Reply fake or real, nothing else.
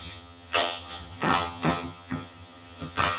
fake